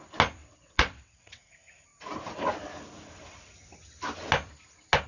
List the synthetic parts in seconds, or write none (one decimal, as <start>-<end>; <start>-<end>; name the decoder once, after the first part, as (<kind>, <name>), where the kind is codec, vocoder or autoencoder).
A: 0.4-1.5 (vocoder, WaveNeXt)